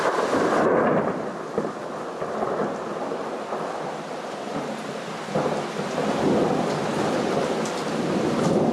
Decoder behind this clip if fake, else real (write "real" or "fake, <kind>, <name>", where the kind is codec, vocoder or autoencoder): real